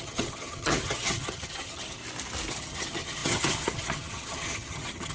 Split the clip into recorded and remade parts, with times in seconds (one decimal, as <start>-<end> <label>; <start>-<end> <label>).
0.0-2.0 remade; 2.0-2.5 recorded; 2.5-5.1 remade